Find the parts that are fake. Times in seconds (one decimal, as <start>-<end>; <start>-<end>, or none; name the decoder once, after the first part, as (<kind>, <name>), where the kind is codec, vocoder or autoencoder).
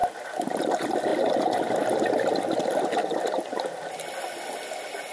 none